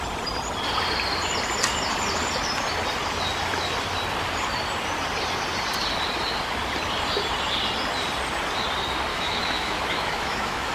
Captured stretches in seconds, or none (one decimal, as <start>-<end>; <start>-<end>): 0.0-9.1